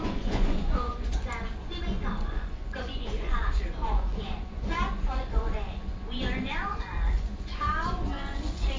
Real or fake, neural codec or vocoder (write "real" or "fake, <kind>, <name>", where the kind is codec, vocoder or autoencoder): fake, vocoder, Vocos